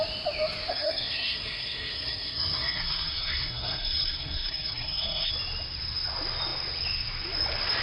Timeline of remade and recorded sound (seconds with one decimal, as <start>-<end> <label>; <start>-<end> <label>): 0.0-0.7 recorded; 0.7-5.3 remade; 5.3-7.8 recorded